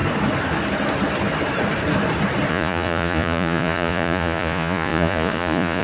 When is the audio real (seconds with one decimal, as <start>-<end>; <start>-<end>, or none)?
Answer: 0.0-2.5